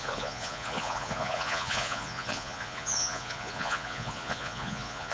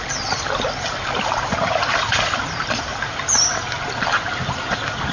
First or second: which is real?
second